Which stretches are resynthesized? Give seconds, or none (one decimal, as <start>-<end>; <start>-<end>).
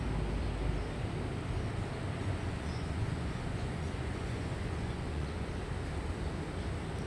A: 2.2-5.5